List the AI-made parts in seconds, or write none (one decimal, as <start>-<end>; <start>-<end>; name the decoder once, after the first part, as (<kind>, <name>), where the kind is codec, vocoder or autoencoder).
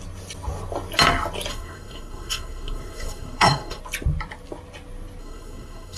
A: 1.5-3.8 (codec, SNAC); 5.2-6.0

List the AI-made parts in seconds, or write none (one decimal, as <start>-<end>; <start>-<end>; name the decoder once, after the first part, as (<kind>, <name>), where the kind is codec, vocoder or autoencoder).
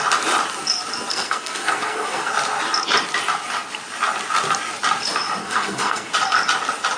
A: 1.1-2.3 (codec, SNAC); 5.4-6.1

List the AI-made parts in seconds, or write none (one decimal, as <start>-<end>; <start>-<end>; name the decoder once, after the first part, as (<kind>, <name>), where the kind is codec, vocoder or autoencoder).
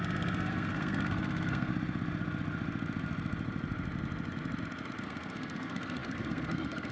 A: 0.0-1.7 (codec, SNAC); 5.0-6.9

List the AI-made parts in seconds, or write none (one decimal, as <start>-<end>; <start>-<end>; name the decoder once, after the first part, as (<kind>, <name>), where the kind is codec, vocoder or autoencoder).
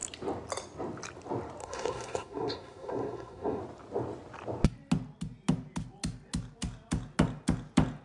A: 1.6-3.6 (codec, SNAC)